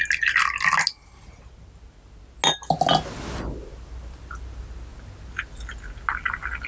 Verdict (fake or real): real